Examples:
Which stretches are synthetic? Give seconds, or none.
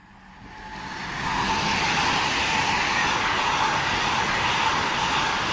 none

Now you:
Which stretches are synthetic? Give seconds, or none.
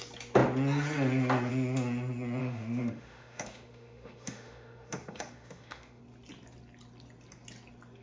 2.4-6.0 (autoencoder, DAC-VAE)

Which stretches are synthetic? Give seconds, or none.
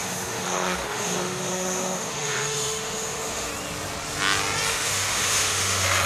0.0-3.5 (autoencoder, DAC-VAE); 4.7-6.1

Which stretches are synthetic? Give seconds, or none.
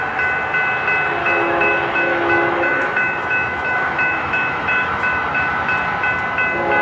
1.2-5.3 (autoencoder, DAC-VAE)